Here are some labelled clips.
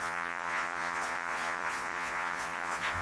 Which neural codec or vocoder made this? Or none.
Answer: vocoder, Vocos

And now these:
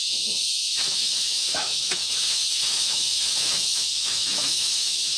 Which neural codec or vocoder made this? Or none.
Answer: autoencoder, DAC-VAE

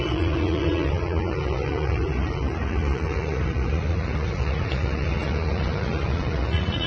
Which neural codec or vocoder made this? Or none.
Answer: vocoder, Vocos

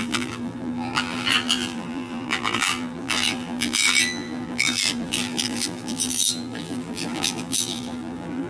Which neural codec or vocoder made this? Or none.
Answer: vocoder, BigVGAN v2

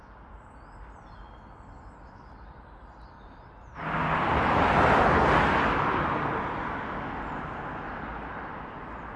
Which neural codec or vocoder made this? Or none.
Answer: none